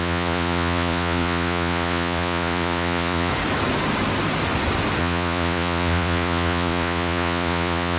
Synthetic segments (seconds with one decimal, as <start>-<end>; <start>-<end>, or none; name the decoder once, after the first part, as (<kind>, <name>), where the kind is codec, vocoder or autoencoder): 0.0-3.3 (vocoder, Vocos); 5.0-8.0

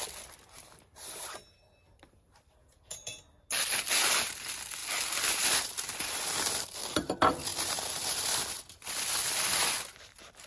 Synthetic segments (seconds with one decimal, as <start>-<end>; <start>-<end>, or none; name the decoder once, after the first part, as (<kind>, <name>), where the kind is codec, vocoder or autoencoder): 2.6-3.2 (vocoder, Vocos)

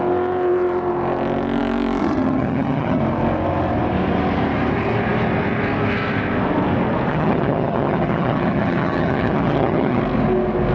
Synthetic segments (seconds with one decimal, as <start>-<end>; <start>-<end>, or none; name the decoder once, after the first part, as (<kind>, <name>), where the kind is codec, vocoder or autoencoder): 2.0-3.0 (vocoder, HiFi-GAN); 7.1-10.0

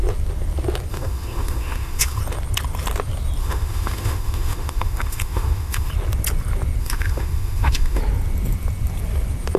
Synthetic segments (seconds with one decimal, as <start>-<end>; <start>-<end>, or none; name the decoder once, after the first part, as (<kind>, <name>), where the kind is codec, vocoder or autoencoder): 0.9-2.2 (autoencoder, DAC-VAE); 3.4-5.9; 6.8-8.0

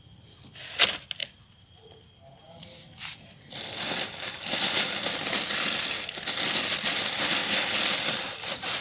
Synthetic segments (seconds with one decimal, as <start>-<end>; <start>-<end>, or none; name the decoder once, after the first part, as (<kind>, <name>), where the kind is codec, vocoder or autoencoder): none

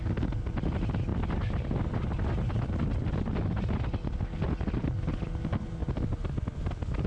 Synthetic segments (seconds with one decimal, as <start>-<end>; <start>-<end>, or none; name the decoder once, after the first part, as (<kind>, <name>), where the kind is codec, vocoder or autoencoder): none